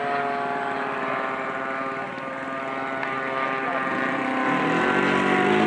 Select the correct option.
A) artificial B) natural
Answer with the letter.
B